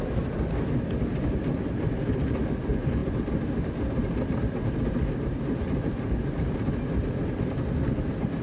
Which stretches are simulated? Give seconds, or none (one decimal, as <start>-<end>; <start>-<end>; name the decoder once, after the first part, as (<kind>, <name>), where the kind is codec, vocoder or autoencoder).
none